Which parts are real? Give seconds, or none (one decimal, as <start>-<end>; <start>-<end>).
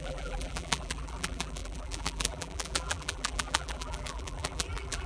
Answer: none